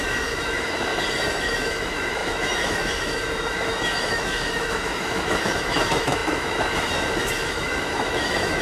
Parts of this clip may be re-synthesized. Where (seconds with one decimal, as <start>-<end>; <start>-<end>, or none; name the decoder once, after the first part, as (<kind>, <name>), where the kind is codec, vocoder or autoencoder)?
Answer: 0.0-0.9 (autoencoder, DAC-VAE); 1.4-8.6

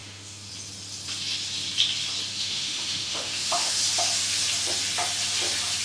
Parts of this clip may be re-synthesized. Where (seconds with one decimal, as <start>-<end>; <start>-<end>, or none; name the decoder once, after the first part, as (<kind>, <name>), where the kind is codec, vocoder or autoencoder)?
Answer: 0.0-0.5 (autoencoder, DAC-VAE); 2.3-3.8

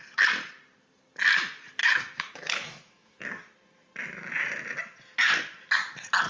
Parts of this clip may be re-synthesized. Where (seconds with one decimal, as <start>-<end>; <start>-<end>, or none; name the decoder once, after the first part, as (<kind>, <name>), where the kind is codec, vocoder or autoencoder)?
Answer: 1.8-3.2 (autoencoder, DAC-VAE)

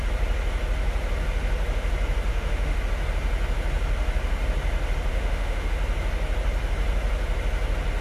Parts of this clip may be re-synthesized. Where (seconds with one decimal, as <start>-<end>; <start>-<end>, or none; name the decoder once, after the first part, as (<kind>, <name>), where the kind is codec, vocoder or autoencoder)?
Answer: 2.3-2.8 (autoencoder, DAC-VAE); 5.1-5.7

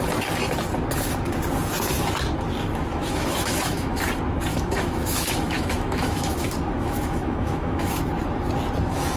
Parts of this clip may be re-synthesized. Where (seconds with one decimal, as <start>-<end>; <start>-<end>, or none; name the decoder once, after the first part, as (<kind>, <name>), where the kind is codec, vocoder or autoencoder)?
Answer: 2.9-4.0 (autoencoder, DAC-VAE); 4.5-8.0

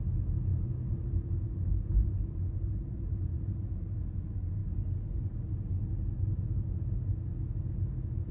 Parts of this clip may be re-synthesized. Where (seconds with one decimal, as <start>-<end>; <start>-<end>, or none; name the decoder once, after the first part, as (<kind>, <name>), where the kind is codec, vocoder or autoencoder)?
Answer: none